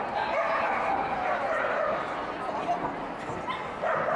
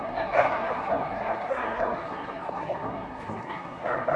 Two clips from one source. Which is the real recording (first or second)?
first